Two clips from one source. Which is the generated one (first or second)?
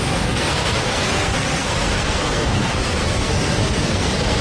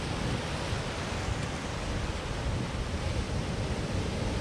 first